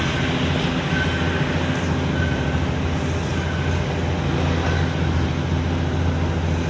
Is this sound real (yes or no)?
yes